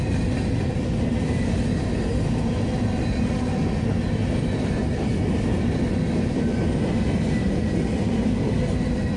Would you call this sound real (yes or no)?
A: yes